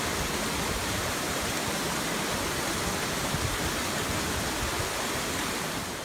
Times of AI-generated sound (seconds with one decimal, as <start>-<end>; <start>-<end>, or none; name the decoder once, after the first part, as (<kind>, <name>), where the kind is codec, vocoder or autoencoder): 0.8-2.2 (vocoder, BigVGAN v2)